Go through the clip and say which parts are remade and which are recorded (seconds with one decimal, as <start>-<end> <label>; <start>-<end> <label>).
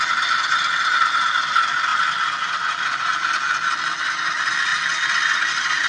0.0-5.9 recorded